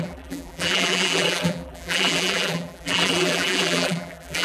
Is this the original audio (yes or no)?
no